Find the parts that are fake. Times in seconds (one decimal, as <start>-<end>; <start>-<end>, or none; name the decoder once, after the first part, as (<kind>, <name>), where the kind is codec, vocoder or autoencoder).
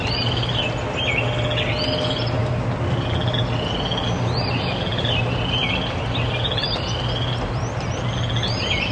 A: none